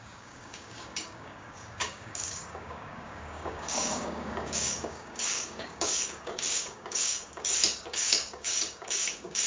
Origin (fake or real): fake